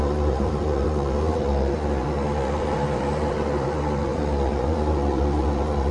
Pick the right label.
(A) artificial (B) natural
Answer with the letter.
A